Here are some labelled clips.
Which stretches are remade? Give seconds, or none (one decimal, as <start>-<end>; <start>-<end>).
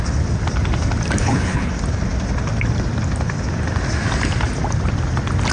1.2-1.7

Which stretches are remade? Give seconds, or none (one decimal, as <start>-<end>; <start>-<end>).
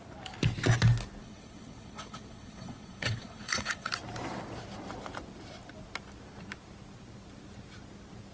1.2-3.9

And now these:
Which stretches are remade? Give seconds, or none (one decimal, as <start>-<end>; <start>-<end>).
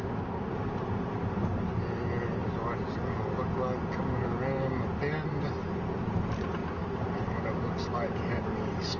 6.6-7.4; 7.9-8.4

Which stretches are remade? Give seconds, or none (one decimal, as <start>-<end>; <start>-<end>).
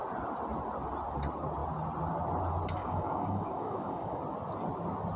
2.8-4.2